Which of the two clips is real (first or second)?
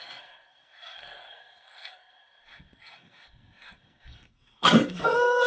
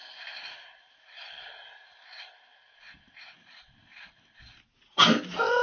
second